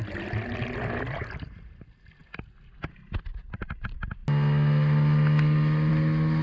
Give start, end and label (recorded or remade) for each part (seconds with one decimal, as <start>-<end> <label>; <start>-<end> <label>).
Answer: 0.0-6.4 recorded